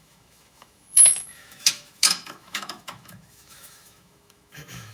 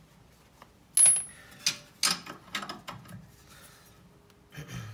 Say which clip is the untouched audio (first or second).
second